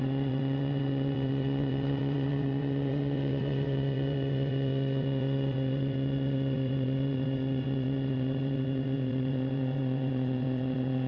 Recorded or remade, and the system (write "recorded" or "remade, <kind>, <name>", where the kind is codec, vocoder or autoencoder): remade, vocoder, WaveNeXt